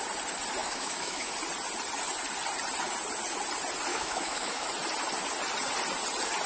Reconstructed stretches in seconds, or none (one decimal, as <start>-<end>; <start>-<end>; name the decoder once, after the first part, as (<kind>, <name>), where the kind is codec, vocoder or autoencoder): 0.6-1.3 (autoencoder, DAC-VAE); 3.9-4.7